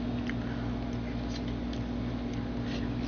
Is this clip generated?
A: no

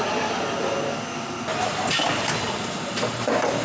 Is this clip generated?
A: no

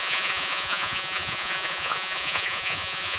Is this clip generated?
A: yes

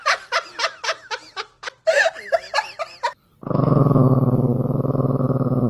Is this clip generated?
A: no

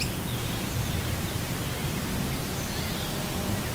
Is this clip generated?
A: no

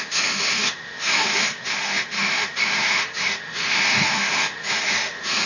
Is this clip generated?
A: yes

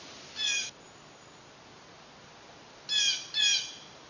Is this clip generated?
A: no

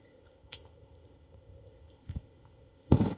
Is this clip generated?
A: yes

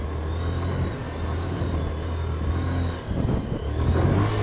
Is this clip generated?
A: no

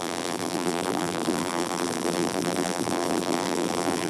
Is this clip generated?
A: yes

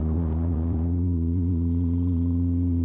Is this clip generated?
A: yes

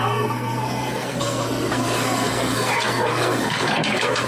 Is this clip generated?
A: yes